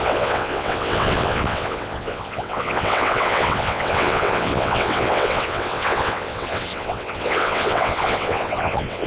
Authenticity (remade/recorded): remade